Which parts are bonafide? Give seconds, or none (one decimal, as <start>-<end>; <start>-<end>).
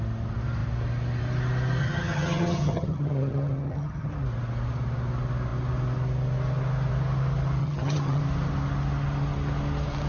0.0-1.8; 4.1-7.6; 8.2-10.1